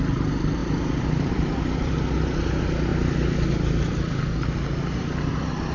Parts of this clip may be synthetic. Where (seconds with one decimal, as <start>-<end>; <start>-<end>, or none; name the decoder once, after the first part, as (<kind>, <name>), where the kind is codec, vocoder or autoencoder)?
0.6-1.9 (vocoder, BigVGAN v2)